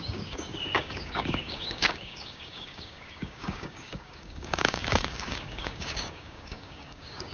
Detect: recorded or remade remade